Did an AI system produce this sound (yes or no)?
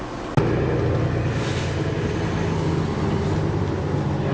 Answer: no